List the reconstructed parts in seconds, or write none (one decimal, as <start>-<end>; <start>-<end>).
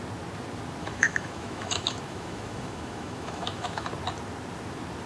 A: 0.8-3.9